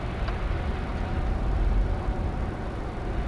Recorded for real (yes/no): yes